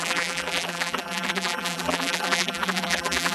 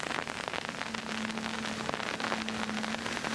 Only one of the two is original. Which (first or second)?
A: second